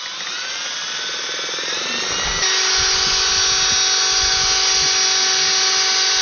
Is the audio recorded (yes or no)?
yes